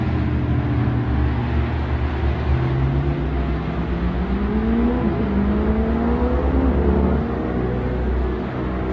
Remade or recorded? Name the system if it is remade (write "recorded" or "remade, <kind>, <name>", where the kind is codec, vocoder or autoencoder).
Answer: recorded